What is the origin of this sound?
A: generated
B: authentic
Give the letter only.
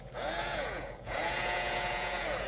A